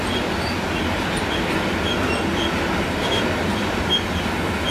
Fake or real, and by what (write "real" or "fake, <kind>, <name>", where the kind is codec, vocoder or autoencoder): real